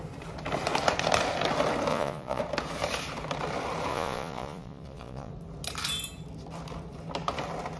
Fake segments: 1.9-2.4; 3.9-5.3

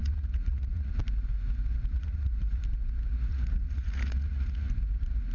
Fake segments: 0.0-1.0; 1.9-2.6; 3.3-4.7

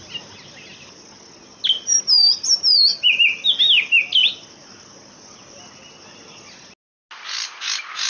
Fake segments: none

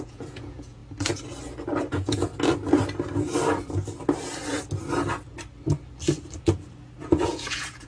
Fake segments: 0.0-0.8; 1.9-2.3; 7.0-7.9

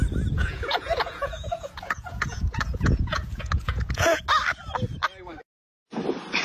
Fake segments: 0.4-4.2